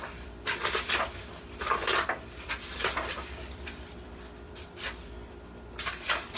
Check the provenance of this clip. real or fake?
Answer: fake